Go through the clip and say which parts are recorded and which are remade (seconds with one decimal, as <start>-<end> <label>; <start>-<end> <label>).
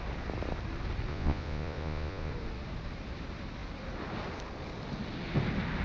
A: 0.0-1.1 recorded; 1.1-2.3 remade; 2.3-5.8 recorded